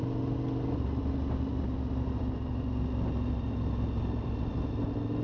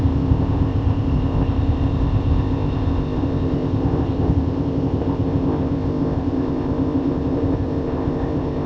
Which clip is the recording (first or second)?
first